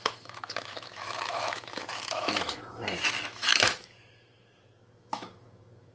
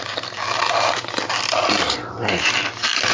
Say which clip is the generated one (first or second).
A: first